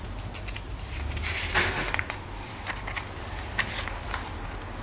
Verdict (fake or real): real